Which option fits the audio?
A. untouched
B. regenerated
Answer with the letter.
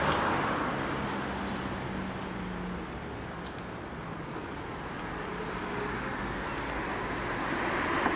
A